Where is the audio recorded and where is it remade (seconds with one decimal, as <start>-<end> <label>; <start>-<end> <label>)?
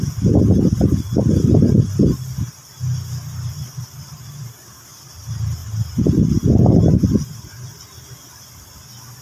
0.0-5.6 recorded; 5.6-6.3 remade; 6.3-9.2 recorded